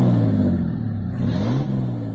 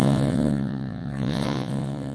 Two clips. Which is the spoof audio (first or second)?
second